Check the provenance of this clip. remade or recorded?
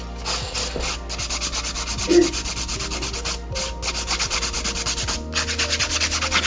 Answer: recorded